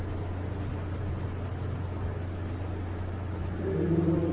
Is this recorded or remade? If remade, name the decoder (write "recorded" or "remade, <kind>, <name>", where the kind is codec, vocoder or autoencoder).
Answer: recorded